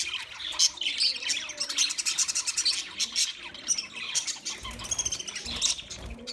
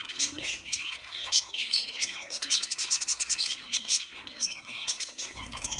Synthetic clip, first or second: second